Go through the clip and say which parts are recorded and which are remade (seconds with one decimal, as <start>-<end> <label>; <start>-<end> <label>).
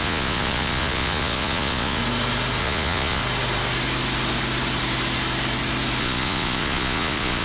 0.0-2.0 remade; 2.0-2.6 recorded; 2.6-3.2 remade; 3.2-6.0 recorded; 6.0-7.4 remade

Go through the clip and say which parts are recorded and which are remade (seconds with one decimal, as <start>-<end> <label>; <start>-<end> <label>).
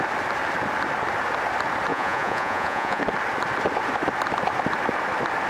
0.0-1.9 recorded; 1.9-3.0 remade; 3.0-5.5 recorded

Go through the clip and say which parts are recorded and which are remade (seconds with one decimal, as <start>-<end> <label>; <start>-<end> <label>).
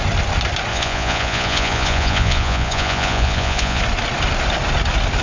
0.0-0.7 recorded; 0.7-3.8 remade; 3.8-5.2 recorded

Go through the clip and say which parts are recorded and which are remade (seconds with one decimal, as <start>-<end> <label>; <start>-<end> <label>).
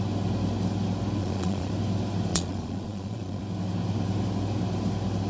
0.0-1.2 recorded; 1.2-1.7 remade; 1.7-2.3 recorded; 2.3-3.4 remade; 3.4-5.3 recorded